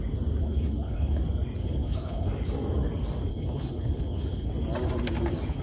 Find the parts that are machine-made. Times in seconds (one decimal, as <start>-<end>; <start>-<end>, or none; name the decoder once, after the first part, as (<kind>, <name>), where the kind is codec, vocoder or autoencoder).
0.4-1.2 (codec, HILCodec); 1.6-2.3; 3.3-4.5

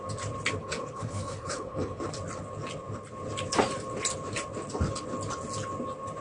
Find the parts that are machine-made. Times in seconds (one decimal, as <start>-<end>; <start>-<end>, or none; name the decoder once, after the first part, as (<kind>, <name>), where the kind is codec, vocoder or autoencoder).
0.6-2.0 (codec, HILCodec)

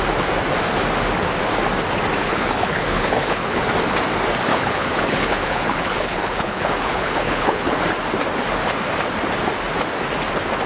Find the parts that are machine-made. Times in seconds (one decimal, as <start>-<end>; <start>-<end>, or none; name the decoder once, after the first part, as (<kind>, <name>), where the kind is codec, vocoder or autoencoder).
2.2-3.6 (codec, HILCodec); 4.5-7.8

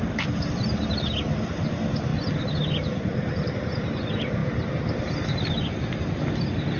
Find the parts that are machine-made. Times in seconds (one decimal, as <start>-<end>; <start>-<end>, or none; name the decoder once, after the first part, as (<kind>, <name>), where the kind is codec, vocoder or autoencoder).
none

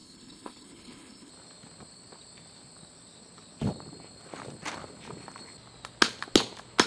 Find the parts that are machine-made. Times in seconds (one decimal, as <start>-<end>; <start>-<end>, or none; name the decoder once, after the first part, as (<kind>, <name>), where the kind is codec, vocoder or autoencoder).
0.0-1.3 (codec, HILCodec)

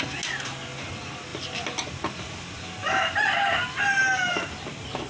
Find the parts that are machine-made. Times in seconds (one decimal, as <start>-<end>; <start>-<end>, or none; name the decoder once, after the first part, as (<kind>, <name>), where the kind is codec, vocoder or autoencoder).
none

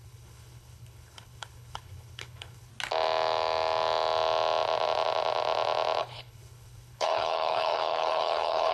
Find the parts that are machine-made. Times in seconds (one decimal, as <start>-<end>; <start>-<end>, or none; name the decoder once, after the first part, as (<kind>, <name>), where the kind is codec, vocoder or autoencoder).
0.0-2.7 (codec, HILCodec); 6.0-8.7

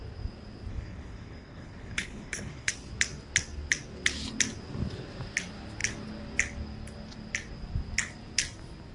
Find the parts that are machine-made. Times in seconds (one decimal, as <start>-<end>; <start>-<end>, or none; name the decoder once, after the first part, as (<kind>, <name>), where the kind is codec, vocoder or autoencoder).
0.7-2.7 (codec, HILCodec)